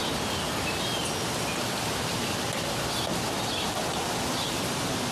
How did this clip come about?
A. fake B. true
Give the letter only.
B